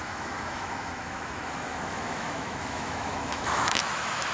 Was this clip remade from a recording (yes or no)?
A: yes